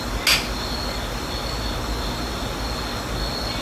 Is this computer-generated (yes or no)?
no